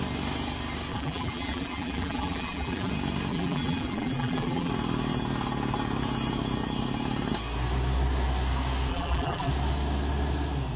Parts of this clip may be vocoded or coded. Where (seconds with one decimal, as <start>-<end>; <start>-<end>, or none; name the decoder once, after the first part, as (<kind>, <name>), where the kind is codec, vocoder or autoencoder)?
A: 0.9-2.9 (vocoder, BigVGAN v2); 3.3-4.7; 8.9-9.5